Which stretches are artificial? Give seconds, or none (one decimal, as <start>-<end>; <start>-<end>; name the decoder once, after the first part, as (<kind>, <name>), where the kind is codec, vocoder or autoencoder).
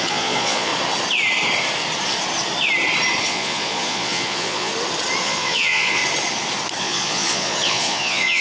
0.0-0.7 (vocoder, Vocos); 3.2-4.7; 5.2-6.0; 6.8-8.4